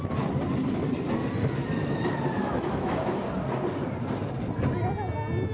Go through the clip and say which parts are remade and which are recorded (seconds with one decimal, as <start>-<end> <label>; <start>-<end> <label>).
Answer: 0.0-2.4 recorded; 2.4-3.2 remade; 3.2-5.5 recorded